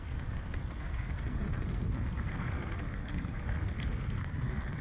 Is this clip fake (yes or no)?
yes